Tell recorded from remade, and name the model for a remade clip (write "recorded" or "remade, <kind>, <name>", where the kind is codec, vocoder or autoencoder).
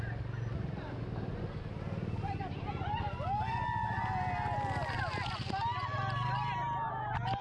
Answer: recorded